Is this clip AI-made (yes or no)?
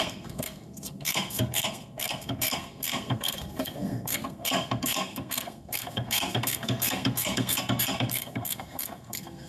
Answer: yes